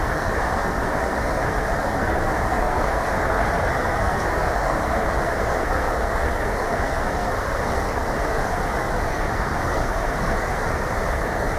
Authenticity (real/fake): fake